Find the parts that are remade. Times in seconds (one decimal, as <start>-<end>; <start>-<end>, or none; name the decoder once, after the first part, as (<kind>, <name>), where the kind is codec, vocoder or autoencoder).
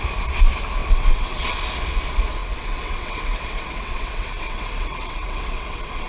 0.8-1.5 (vocoder, WaveNeXt); 2.4-6.1